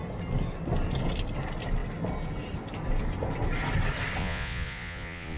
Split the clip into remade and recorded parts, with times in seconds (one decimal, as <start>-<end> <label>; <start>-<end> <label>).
0.0-4.2 recorded; 4.2-5.4 remade